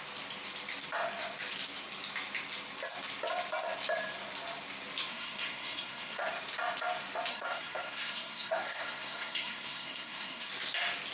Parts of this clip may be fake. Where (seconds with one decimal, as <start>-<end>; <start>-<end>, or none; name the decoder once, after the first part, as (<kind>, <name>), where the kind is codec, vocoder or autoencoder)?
5.1-6.2 (codec, SNAC); 7.3-10.5